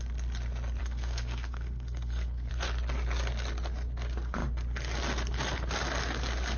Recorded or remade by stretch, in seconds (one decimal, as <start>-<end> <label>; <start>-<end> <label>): 0.0-0.8 recorded; 0.8-2.5 remade; 2.5-6.6 recorded